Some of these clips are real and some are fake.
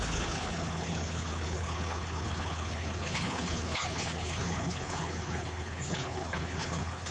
fake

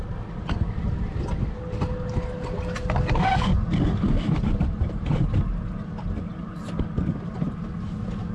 real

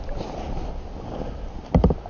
real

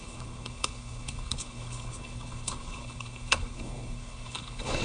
fake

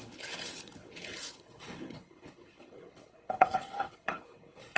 fake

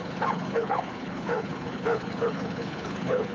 fake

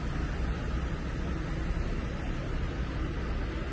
real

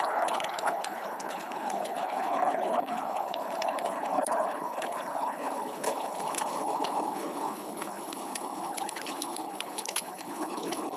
fake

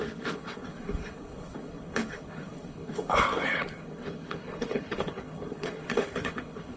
fake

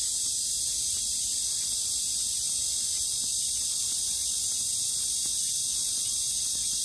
real